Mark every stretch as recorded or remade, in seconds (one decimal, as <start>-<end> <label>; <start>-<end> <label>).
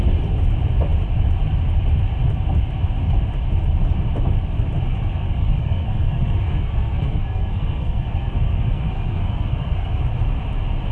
0.0-4.9 recorded; 4.9-10.0 remade; 10.0-10.9 recorded